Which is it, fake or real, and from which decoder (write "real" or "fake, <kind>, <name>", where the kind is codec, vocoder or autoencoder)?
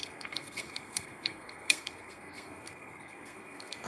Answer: fake, codec, SNAC